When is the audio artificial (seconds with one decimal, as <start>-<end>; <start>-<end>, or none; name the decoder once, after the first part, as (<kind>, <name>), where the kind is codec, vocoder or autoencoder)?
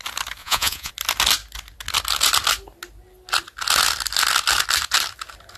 0.4-0.9 (vocoder, Vocos)